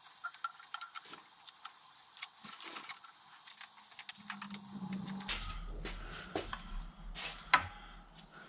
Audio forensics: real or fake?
real